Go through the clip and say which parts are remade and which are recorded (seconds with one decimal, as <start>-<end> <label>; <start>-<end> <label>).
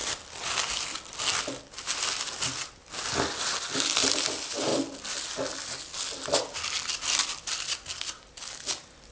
0.0-9.1 recorded